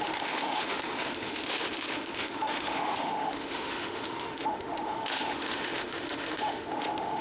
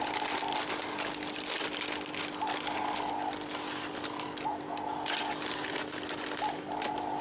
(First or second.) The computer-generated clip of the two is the first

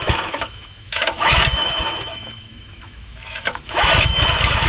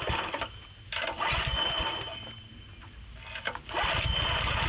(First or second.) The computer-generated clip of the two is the first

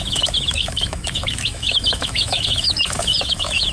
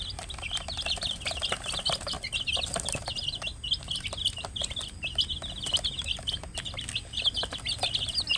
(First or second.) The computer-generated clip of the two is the first